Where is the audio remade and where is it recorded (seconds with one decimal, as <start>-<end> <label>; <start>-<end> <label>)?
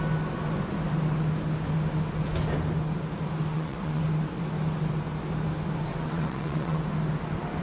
0.0-3.5 recorded; 3.5-4.0 remade; 4.0-5.9 recorded; 5.9-6.8 remade; 6.8-7.6 recorded